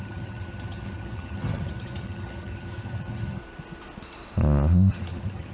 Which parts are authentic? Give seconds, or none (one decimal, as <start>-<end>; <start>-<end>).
3.4-4.9